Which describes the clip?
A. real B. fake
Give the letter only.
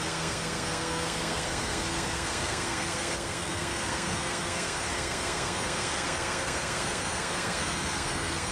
B